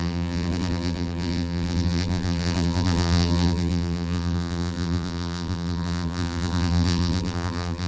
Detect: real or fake fake